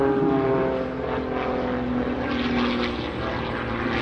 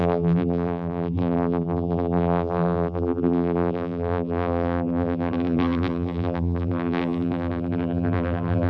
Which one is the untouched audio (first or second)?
first